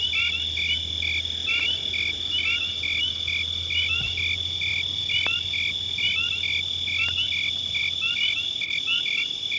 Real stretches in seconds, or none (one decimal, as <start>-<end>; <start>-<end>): 0.0-9.6